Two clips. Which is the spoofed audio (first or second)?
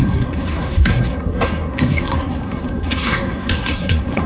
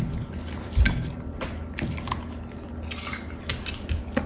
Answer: first